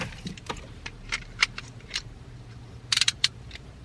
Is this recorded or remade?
remade